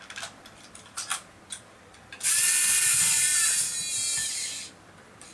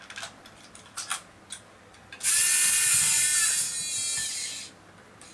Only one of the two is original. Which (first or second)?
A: second